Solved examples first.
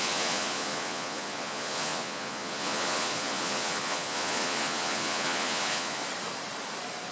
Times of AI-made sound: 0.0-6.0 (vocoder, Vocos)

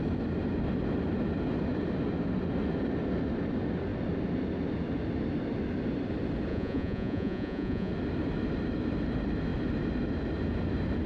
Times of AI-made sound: 6.5-7.9 (vocoder, Vocos)

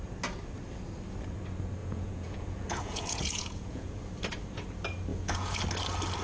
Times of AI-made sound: 1.8-4.0 (vocoder, Vocos); 5.1-5.6

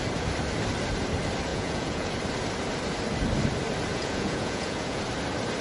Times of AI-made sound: 1.5-2.1 (vocoder, Vocos); 3.9-5.0

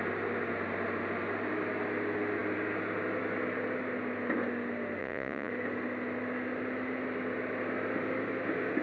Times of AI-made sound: 5.0-5.5 (vocoder, Vocos)

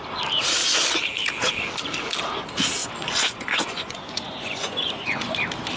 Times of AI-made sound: 2.8-5.3 (vocoder, Vocos)

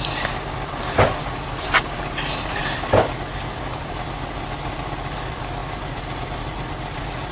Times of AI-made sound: none

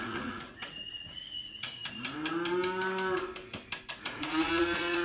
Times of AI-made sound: 0.0-1.8 (vocoder, Vocos); 3.9-5.0